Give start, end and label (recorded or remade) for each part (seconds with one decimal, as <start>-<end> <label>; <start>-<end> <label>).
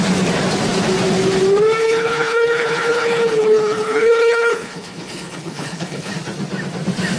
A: 0.0-1.8 recorded; 1.8-6.1 remade; 6.1-7.2 recorded